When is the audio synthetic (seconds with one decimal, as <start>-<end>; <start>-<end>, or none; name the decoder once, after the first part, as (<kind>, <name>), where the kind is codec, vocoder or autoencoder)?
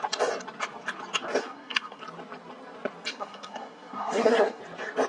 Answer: 1.4-2.0 (codec, SNAC); 3.1-4.6